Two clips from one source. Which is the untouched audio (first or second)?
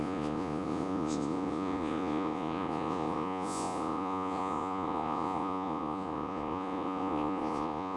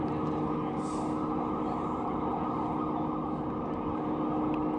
second